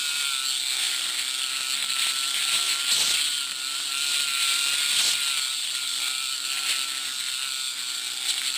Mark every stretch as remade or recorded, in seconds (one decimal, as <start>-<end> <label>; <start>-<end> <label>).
0.0-8.6 recorded